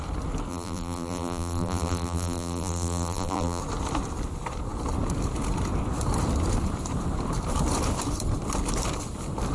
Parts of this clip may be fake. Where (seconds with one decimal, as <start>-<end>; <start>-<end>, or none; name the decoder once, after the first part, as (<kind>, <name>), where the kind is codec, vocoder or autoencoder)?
0.5-3.6 (vocoder, BigVGAN v2)